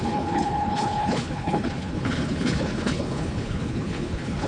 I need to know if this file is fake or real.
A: fake